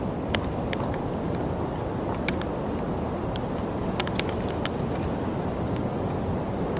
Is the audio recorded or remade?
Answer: recorded